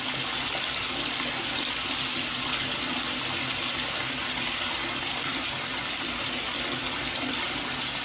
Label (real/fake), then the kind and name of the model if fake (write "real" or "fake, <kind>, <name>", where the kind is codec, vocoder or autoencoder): real